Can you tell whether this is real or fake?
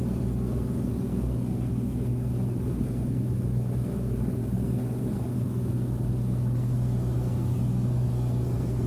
fake